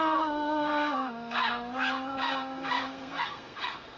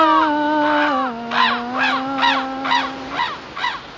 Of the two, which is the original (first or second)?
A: second